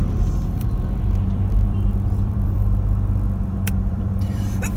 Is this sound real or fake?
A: fake